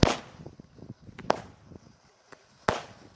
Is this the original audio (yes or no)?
yes